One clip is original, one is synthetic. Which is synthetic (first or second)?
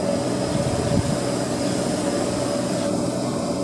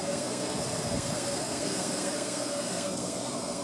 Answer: second